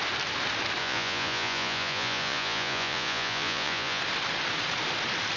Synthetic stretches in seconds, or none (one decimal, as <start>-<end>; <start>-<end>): 0.8-4.0